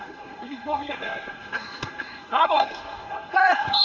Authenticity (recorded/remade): remade